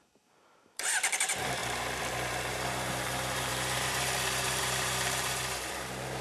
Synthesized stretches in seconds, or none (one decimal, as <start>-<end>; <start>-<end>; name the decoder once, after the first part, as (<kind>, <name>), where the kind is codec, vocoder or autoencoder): 0.0-1.6 (vocoder, BigVGAN v2); 2.5-6.2